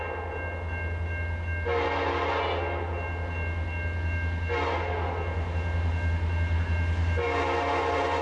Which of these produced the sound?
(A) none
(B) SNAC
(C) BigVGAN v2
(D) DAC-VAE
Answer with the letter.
A